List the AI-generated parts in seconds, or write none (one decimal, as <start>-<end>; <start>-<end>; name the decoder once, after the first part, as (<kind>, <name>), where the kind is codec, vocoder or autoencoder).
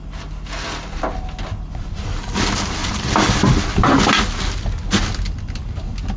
2.8-3.6 (vocoder, BigVGAN v2)